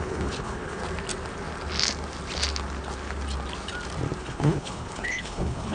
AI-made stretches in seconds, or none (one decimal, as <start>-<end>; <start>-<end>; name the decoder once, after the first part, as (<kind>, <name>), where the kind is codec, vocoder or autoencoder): 0.0-0.8 (codec, HILCodec); 4.2-5.7